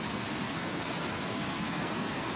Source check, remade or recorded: remade